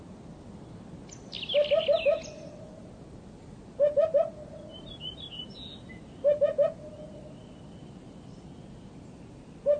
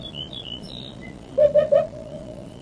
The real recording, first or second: first